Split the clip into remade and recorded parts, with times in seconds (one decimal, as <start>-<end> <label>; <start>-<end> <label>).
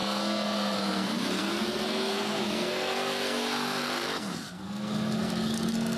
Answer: 0.0-6.0 remade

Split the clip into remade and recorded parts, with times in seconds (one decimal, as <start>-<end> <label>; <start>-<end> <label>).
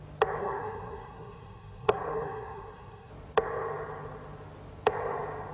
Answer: 0.0-0.4 recorded; 0.4-3.1 remade; 3.1-5.5 recorded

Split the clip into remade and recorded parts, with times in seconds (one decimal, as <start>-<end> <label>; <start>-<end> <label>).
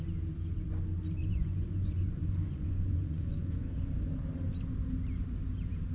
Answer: 0.0-1.2 recorded; 1.2-3.7 remade; 3.7-5.9 recorded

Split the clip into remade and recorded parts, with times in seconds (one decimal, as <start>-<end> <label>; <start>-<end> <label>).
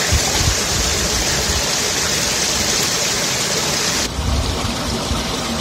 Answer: 0.0-5.6 recorded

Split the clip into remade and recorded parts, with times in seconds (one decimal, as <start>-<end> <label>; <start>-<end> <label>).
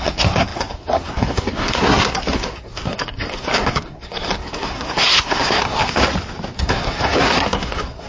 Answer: 0.0-6.0 remade; 6.0-6.6 recorded; 6.6-8.1 remade